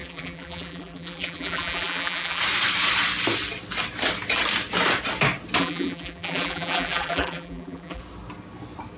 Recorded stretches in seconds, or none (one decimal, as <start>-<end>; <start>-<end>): 2.4-5.6; 8.0-9.0